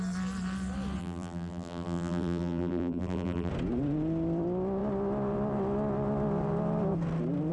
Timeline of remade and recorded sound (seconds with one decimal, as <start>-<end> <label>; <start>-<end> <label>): 0.0-1.0 recorded; 1.0-3.5 remade; 3.5-7.5 recorded